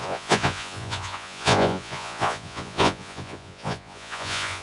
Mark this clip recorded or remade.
remade